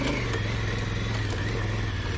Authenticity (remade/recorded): recorded